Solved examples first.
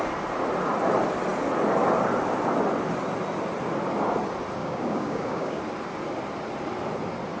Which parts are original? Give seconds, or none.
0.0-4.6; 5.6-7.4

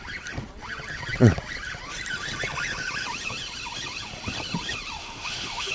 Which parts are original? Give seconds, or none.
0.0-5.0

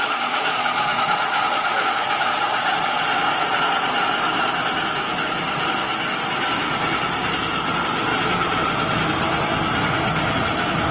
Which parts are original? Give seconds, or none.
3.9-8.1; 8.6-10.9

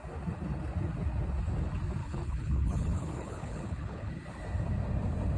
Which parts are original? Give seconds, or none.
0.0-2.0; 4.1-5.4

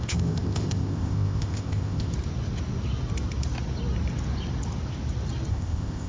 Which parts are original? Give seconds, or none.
2.1-5.5

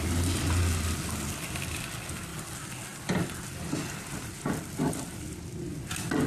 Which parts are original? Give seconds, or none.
0.0-6.3